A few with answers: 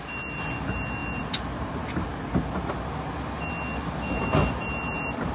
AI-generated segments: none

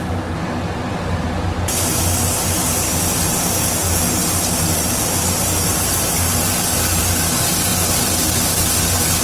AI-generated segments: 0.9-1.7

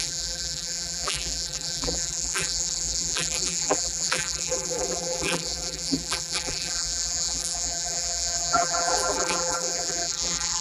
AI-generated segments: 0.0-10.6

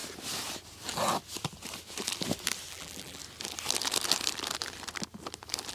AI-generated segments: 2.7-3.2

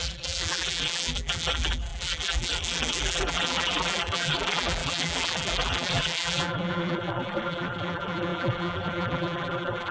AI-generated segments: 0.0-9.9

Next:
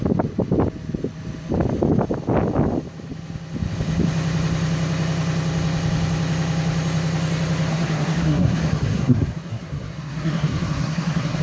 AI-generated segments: 7.7-11.4